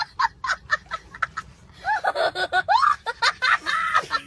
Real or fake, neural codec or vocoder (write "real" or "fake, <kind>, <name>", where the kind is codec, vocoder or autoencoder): real